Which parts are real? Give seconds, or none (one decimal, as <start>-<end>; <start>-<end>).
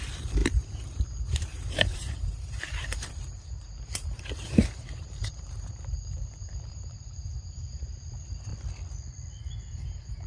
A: 8.5-9.7